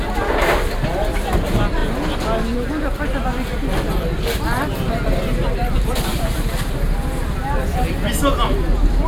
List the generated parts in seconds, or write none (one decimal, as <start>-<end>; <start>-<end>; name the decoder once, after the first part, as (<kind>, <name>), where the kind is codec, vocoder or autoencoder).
none